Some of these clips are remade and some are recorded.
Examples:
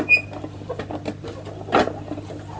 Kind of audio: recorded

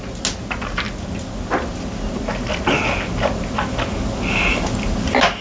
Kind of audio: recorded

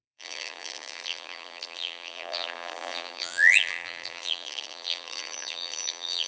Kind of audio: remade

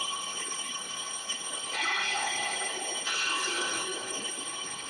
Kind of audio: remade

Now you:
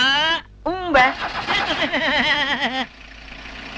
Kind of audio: recorded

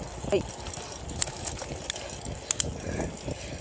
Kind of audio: recorded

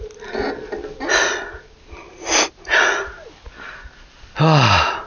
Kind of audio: recorded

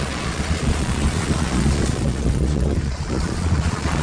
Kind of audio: remade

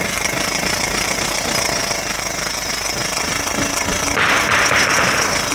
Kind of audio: recorded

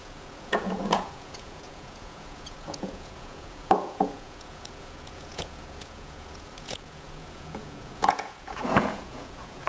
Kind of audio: remade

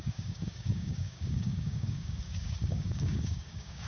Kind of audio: remade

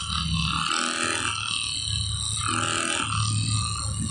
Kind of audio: recorded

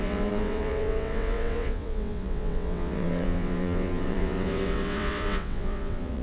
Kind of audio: remade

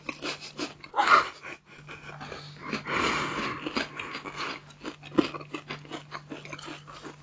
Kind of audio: recorded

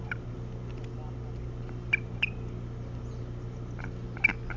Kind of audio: recorded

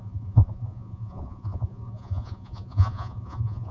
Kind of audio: remade